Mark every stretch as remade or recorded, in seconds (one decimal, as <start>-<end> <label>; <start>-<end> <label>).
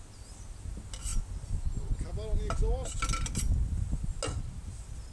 0.0-5.1 recorded